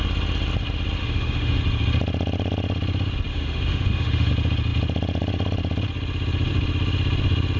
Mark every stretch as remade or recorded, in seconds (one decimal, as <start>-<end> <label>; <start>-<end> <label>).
0.0-1.0 recorded; 1.0-1.6 remade; 1.6-3.3 recorded; 3.3-4.3 remade; 4.3-7.6 recorded